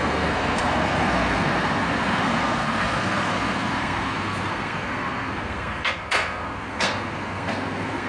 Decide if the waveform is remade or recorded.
remade